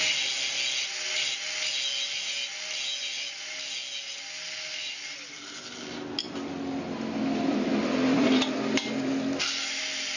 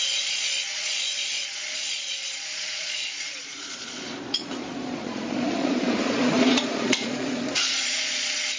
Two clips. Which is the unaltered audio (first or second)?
first